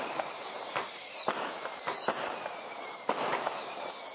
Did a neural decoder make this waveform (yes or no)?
yes